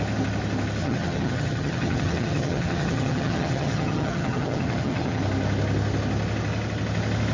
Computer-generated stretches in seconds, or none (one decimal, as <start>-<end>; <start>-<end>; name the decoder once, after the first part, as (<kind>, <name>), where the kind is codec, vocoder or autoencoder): 0.8-5.2 (vocoder, HiFi-GAN)